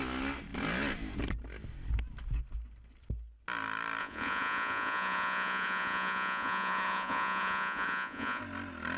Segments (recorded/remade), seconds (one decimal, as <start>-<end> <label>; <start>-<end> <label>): 0.0-4.0 recorded; 4.0-8.4 remade; 8.4-9.0 recorded